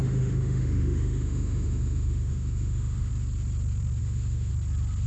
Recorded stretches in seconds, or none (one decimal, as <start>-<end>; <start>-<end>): 3.1-4.0; 4.5-5.1